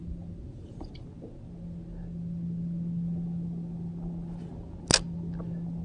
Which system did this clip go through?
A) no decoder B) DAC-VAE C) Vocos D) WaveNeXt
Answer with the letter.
A